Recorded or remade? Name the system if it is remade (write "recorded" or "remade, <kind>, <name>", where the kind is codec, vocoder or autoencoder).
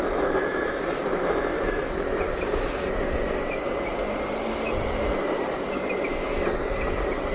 remade, vocoder, BigVGAN v2